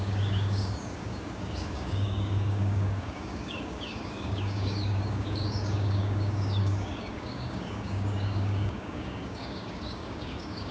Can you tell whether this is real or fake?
fake